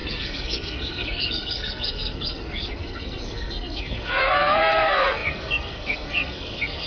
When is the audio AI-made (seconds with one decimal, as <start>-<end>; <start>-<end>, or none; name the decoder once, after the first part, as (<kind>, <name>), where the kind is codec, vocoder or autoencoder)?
0.0-6.9 (codec, SNAC)

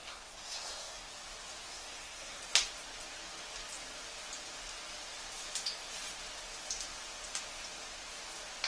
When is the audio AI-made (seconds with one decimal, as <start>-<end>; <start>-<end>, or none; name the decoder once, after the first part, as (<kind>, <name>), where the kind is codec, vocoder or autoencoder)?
0.0-1.1 (codec, SNAC); 1.7-2.4